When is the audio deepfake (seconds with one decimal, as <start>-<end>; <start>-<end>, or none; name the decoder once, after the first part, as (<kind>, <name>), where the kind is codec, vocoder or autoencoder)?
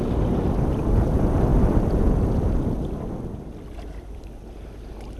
1.5-4.3 (vocoder, BigVGAN v2)